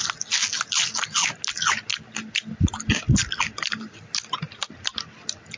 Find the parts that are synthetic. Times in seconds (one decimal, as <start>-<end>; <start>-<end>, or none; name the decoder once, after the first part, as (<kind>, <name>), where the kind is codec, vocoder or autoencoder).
none